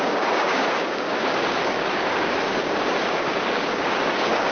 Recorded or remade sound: remade